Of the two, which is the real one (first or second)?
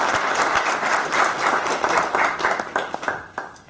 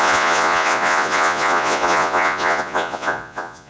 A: first